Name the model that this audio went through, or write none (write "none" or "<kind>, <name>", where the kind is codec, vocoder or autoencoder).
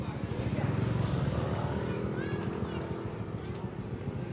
none